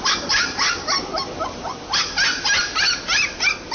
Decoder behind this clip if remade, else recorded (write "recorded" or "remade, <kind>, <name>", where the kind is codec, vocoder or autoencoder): recorded